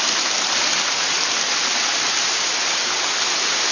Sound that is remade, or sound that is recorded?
recorded